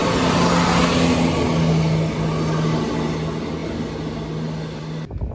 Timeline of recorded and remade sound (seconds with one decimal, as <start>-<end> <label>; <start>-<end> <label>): 0.0-5.3 recorded